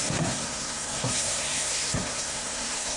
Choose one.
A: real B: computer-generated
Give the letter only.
B